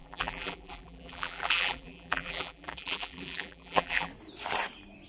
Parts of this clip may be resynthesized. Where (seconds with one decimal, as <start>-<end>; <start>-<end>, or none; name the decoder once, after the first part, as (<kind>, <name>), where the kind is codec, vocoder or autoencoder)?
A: 0.0-4.1 (vocoder, BigVGAN v2)